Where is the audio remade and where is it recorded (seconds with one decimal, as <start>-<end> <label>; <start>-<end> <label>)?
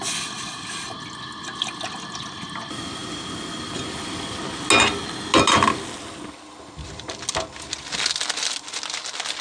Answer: 0.0-9.4 recorded